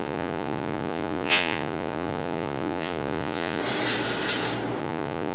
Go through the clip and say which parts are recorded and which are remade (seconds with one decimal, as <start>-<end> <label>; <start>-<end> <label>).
0.0-3.6 remade; 3.6-4.8 recorded; 4.8-5.3 remade